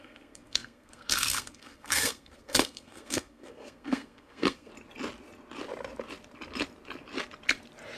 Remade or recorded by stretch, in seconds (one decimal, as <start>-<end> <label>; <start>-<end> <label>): 0.0-4.7 remade; 4.7-8.0 recorded